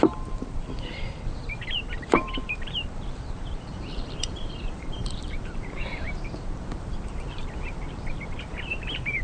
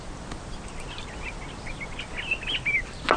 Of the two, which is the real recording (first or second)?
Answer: second